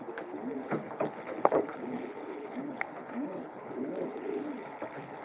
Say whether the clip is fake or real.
fake